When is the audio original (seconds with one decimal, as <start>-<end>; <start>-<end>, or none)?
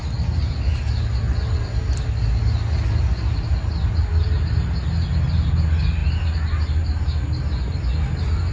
0.0-8.5